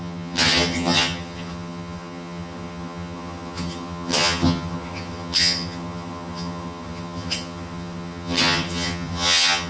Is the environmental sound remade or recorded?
remade